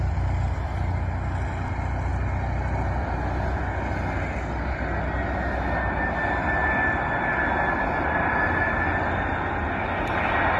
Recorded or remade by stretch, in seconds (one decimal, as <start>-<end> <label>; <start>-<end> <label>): 0.0-10.6 recorded